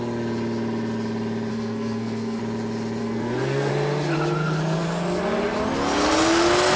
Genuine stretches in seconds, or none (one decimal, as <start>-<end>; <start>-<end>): 0.0-1.5; 2.4-3.0; 3.7-6.8